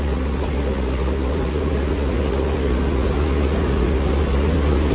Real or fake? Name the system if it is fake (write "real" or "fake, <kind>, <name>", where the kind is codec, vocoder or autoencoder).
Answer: fake, vocoder, Vocos